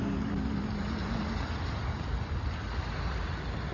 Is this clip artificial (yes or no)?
no